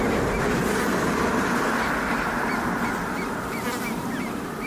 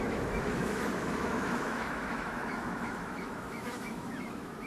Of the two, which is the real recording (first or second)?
first